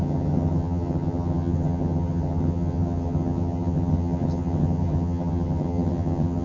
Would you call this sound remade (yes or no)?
yes